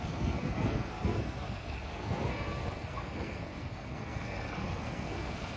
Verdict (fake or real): fake